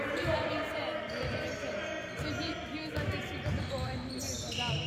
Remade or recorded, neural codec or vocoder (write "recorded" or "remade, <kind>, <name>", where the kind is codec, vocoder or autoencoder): recorded